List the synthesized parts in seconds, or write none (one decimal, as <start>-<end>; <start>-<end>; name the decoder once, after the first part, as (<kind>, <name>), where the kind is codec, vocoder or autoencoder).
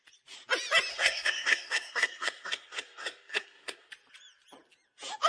0.9-3.9 (codec, SNAC)